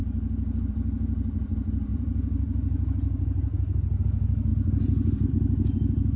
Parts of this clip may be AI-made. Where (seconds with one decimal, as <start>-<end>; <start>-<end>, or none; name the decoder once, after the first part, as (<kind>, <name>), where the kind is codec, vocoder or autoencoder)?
1.9-4.0 (vocoder, BigVGAN v2)

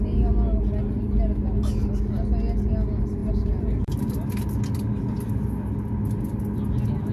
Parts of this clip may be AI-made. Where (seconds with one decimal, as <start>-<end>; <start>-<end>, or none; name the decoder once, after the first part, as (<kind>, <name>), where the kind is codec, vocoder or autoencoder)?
3.2-4.1 (vocoder, BigVGAN v2)

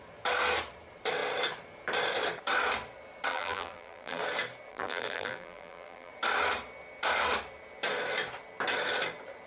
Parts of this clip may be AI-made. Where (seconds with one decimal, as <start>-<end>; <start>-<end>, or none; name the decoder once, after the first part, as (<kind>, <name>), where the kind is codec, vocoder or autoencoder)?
3.3-4.2 (vocoder, BigVGAN v2); 4.7-6.1

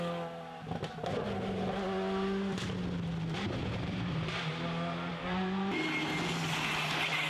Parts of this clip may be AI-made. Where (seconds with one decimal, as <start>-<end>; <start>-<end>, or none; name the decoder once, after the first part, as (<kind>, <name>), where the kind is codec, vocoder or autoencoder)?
3.6-4.2 (vocoder, BigVGAN v2)

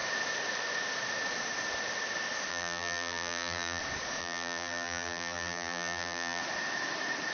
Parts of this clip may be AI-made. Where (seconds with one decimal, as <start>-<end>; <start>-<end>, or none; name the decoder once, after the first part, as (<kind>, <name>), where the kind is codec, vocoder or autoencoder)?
2.5-3.8 (vocoder, BigVGAN v2); 4.2-6.4

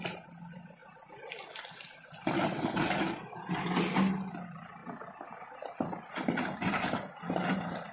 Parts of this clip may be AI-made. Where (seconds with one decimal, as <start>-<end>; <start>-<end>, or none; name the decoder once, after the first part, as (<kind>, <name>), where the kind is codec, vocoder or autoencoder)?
none